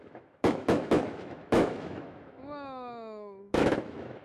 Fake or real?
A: fake